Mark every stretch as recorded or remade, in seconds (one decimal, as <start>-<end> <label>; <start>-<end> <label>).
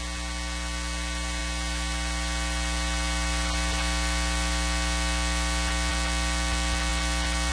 0.0-7.5 recorded